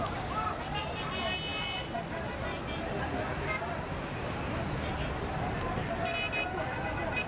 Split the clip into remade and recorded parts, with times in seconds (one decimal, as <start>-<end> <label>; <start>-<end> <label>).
0.0-7.3 recorded